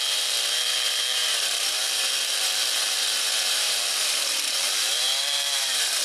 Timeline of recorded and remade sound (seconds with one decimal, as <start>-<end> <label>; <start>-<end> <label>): 0.0-6.0 remade